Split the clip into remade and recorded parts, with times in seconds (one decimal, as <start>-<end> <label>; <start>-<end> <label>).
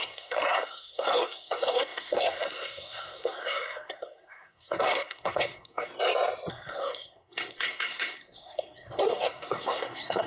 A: 0.0-5.9 remade; 5.9-6.5 recorded; 6.5-10.3 remade